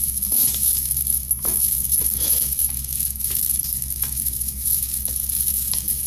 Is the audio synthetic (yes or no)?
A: yes